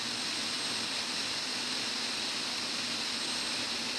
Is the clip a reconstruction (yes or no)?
no